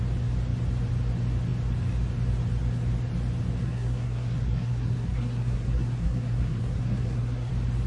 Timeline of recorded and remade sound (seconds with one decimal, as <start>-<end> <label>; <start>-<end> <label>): 0.0-3.6 recorded; 3.6-7.5 remade; 7.5-7.9 recorded